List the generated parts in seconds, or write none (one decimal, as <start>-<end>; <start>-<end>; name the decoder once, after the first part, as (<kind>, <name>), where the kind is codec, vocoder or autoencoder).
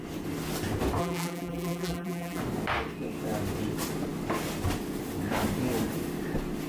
1.0-2.4 (vocoder, BigVGAN v2)